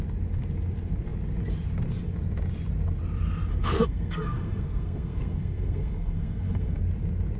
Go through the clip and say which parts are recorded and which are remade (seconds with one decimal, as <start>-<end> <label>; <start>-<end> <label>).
0.0-3.5 recorded; 3.5-6.8 remade; 6.8-7.4 recorded